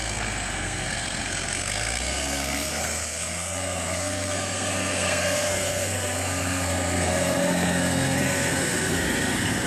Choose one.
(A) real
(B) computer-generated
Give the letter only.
B